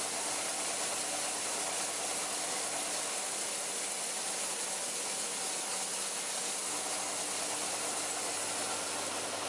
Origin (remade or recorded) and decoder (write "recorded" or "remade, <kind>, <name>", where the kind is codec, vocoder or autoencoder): recorded